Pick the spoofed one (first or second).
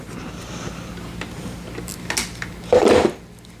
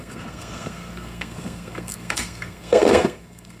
second